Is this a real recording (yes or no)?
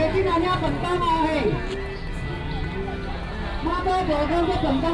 yes